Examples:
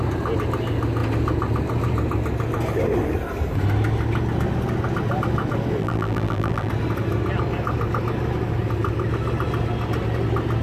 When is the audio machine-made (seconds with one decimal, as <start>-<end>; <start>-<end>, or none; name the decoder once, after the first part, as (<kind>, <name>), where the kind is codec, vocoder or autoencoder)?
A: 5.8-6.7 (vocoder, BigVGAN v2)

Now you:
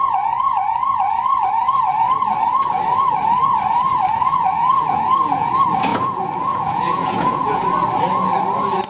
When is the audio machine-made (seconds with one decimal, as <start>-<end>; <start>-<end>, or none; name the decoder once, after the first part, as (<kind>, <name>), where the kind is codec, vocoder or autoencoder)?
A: 4.2-5.5 (vocoder, Vocos); 5.9-7.6

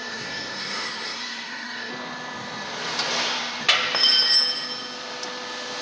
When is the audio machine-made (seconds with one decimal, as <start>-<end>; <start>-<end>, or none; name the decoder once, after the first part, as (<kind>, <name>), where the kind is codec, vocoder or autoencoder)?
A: 0.0-1.9 (codec, SNAC)

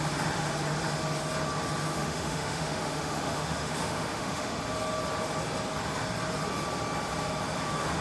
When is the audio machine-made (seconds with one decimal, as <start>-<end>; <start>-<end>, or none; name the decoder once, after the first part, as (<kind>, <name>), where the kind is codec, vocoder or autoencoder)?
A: 1.9-4.6 (autoencoder, DAC-VAE)

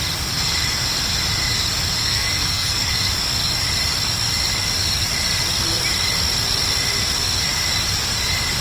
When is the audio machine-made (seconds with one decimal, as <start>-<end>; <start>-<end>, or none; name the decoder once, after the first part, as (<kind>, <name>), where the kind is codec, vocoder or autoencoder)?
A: 2.0-2.9 (codec, SNAC)